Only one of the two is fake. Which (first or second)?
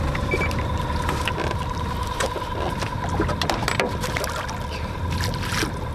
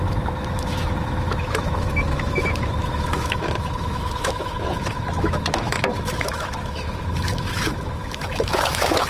second